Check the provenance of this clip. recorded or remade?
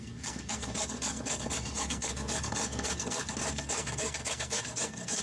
remade